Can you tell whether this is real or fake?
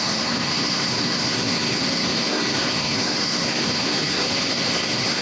fake